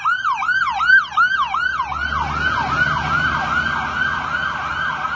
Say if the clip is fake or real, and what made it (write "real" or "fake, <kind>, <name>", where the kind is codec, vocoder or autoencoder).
real